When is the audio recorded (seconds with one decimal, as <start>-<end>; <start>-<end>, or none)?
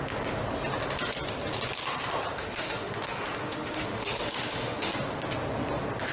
0.0-2.4; 4.9-6.1